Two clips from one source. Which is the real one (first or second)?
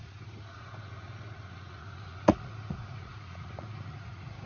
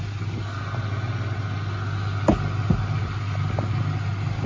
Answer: second